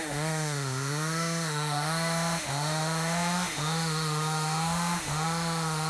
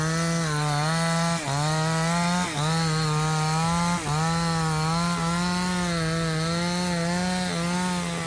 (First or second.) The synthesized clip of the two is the first